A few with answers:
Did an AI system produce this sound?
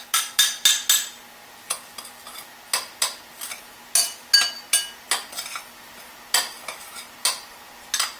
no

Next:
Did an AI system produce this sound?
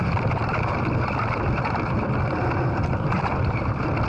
yes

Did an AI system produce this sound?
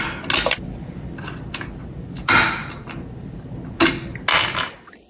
no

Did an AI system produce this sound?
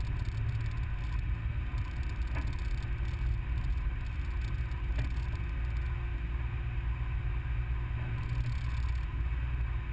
no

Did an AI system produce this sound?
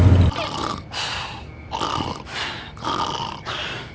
no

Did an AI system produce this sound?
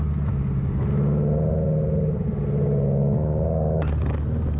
no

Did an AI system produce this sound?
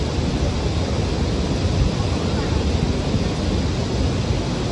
no